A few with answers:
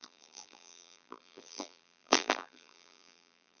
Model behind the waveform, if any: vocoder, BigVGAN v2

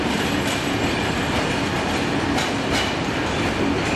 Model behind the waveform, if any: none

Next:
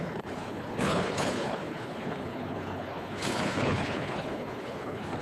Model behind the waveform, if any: codec, HILCodec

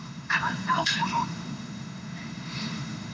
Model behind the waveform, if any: autoencoder, DAC-VAE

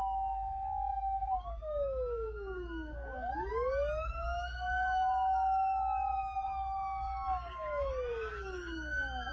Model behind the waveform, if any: codec, DAC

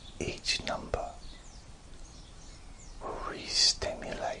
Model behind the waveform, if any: vocoder, BigVGAN v2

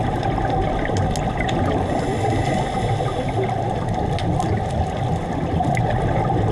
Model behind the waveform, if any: none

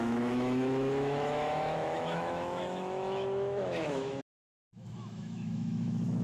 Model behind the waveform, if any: autoencoder, DAC-VAE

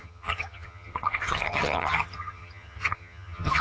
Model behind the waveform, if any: vocoder, HiFi-GAN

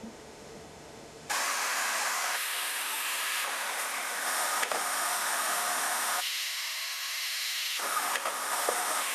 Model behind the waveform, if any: autoencoder, DAC-VAE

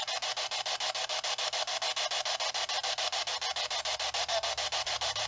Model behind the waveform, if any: none